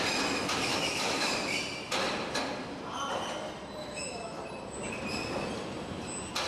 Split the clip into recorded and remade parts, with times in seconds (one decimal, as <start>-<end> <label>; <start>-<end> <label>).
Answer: 0.0-0.7 recorded; 0.7-1.3 remade; 1.3-3.8 recorded; 3.8-4.4 remade; 4.4-6.5 recorded